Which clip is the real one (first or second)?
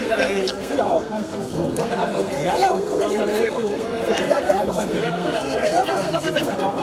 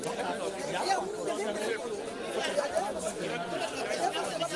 second